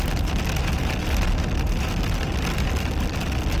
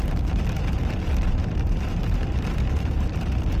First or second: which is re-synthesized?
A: second